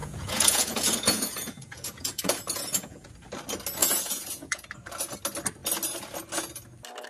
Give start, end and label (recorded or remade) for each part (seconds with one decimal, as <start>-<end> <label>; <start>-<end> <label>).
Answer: 0.0-3.1 remade; 3.1-3.8 recorded; 3.8-4.6 remade; 4.6-7.1 recorded